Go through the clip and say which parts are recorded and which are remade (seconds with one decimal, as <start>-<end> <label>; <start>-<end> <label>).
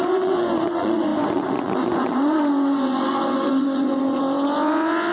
0.0-5.1 remade